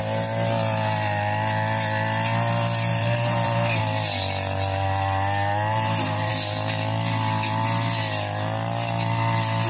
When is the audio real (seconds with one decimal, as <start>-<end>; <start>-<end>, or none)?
0.0-2.9; 3.8-5.7; 6.3-9.7